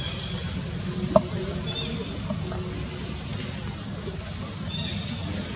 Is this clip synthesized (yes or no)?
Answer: no